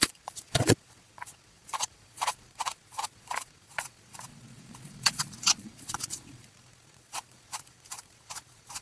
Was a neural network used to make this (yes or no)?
yes